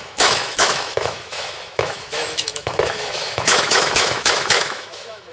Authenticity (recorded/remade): remade